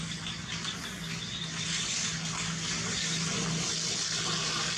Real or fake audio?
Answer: real